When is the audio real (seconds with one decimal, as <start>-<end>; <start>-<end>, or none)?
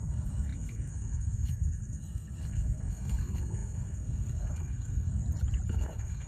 5.2-5.7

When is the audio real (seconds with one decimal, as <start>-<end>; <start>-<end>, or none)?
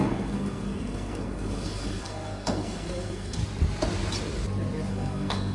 3.4-4.9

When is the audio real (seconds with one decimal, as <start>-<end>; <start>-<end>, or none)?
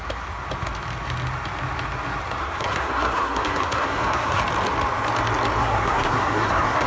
0.0-2.4; 4.4-5.6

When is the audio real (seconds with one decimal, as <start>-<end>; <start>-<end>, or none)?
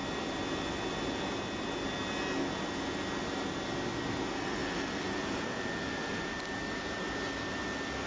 0.0-8.1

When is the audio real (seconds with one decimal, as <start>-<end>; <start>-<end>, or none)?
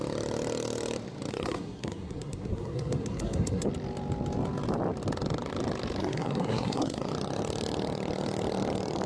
0.0-1.3; 3.7-6.0; 7.1-9.1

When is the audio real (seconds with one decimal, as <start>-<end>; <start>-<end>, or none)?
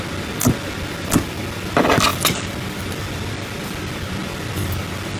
0.0-5.2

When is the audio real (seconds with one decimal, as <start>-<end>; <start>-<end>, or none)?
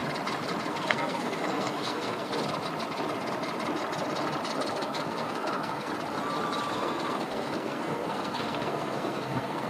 0.0-0.7; 2.3-4.7; 5.9-6.7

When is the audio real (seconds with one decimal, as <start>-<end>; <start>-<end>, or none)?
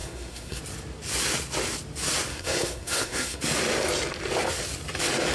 0.6-2.3; 3.4-5.3